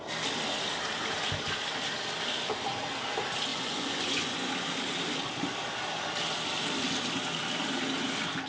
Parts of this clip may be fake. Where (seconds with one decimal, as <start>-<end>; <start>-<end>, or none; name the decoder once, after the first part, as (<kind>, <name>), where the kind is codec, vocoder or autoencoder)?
3.5-4.5 (vocoder, Vocos)